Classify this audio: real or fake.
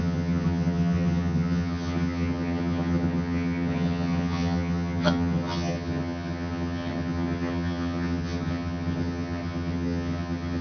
fake